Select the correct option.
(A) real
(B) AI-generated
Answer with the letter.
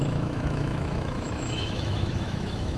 B